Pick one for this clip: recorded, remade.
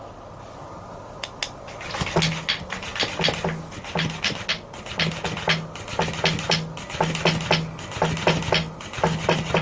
recorded